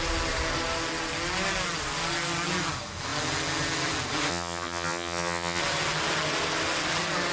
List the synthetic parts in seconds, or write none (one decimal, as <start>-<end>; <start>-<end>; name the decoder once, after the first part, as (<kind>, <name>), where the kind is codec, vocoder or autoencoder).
4.3-5.6 (vocoder, HiFi-GAN)